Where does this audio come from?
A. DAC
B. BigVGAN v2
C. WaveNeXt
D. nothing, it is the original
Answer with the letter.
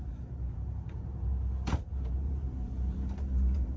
B